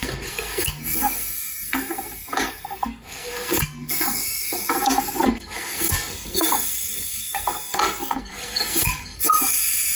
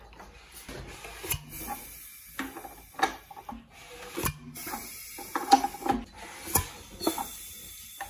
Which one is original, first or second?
second